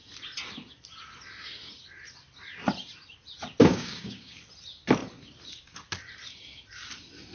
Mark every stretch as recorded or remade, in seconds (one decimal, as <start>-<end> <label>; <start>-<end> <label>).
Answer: 0.0-3.6 recorded; 3.6-4.4 remade; 4.4-7.3 recorded